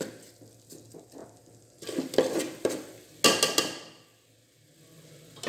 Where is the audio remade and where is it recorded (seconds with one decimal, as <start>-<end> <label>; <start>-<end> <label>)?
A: 0.0-5.5 recorded